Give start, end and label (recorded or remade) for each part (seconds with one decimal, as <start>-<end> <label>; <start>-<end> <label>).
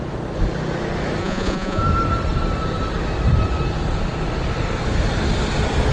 0.0-1.2 recorded; 1.2-1.8 remade; 1.8-5.9 recorded